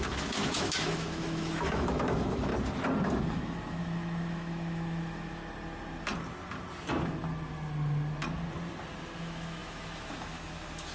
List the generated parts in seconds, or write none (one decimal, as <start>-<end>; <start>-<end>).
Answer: 0.0-2.5; 3.2-5.4; 9.2-10.9